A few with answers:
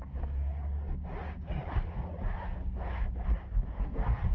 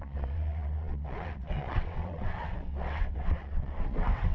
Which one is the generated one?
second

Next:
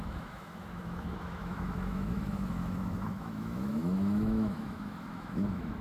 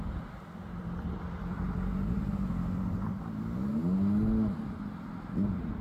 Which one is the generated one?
first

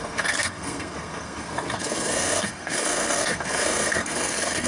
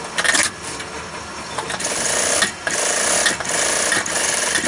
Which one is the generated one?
first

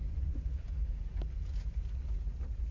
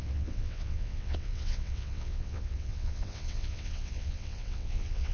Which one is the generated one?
second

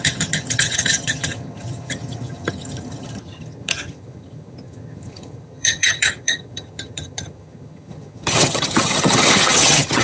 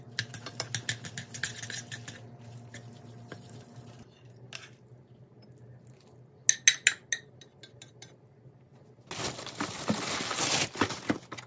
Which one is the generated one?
first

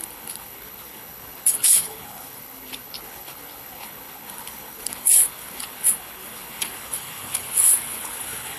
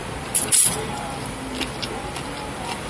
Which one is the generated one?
first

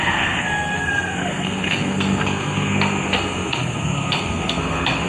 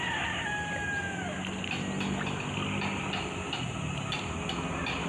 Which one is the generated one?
first